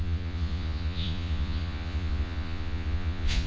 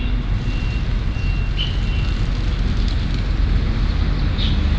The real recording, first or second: second